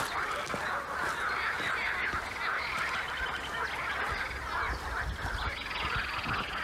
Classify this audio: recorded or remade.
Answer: recorded